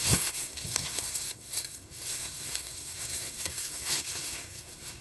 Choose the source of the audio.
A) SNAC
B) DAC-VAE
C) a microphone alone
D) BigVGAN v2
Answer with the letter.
A